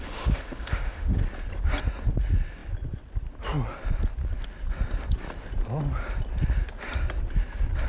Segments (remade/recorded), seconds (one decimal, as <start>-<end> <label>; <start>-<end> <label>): 0.0-1.2 remade; 1.2-7.9 recorded